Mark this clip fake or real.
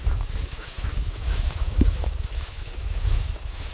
fake